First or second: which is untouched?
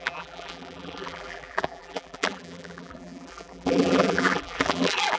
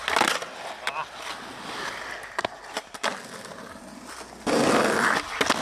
second